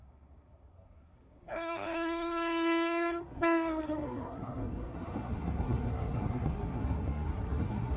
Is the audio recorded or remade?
remade